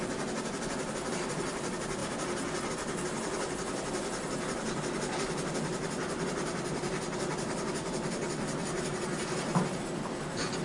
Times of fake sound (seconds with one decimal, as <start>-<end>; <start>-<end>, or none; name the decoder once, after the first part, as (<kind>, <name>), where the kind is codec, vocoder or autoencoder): none